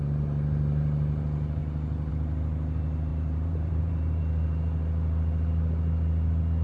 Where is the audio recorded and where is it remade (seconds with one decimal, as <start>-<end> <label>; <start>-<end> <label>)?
0.0-3.1 recorded; 3.1-4.2 remade; 4.2-6.6 recorded